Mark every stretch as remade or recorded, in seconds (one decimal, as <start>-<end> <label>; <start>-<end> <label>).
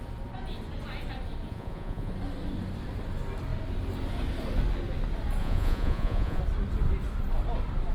0.0-1.5 recorded; 1.5-2.1 remade; 2.1-5.4 recorded; 5.4-6.4 remade; 6.4-7.9 recorded